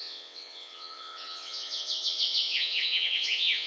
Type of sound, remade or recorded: remade